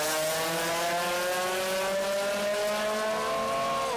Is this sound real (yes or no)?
yes